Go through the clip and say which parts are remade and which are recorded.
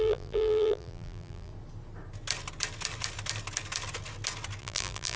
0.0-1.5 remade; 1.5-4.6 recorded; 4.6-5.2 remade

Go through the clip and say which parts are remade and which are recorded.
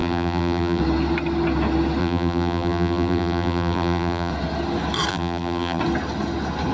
0.0-0.8 remade; 0.8-2.0 recorded; 2.0-4.3 remade; 4.3-5.1 recorded; 5.1-5.8 remade; 5.8-6.7 recorded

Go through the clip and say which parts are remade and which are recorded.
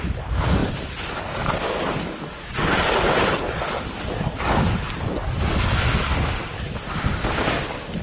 0.0-8.0 recorded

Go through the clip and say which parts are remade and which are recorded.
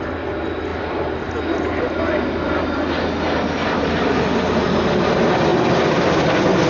0.0-0.7 recorded; 0.7-1.3 remade; 1.3-3.6 recorded; 3.6-4.2 remade; 4.2-5.5 recorded; 5.5-6.2 remade; 6.2-6.7 recorded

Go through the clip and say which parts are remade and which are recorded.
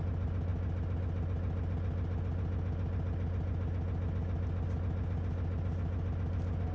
0.0-6.7 recorded